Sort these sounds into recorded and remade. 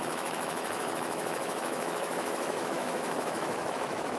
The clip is remade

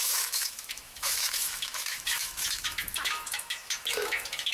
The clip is remade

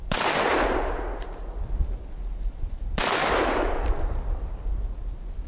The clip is recorded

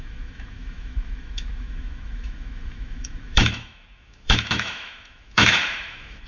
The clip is remade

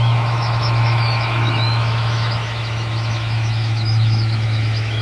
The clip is remade